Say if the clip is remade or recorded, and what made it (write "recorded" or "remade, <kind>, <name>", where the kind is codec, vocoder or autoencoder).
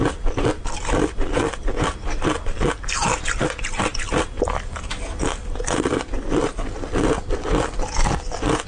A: recorded